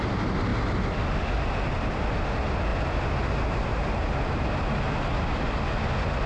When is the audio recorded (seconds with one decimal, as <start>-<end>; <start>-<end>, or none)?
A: 0.0-6.3